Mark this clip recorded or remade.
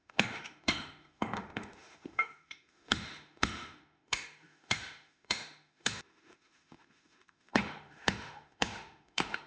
remade